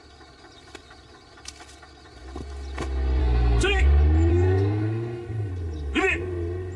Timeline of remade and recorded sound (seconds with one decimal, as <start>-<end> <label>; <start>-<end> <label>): 0.0-3.2 recorded; 3.2-3.8 remade; 3.8-4.3 recorded; 4.3-5.5 remade; 5.5-6.8 recorded